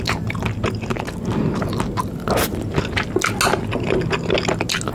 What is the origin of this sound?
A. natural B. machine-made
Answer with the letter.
A